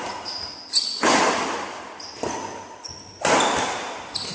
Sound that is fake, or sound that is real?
real